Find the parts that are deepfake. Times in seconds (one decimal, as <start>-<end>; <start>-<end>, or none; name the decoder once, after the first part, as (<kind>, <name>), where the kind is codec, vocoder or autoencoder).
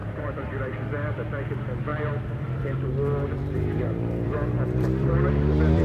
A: 0.0-5.8 (vocoder, BigVGAN v2)